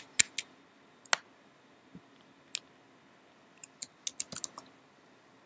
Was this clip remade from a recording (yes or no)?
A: no